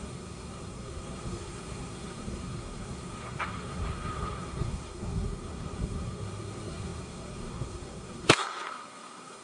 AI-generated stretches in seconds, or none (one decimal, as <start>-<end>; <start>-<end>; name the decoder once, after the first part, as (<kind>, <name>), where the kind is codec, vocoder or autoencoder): 0.0-9.4 (codec, SNAC)